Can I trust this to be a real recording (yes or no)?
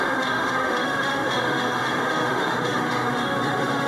no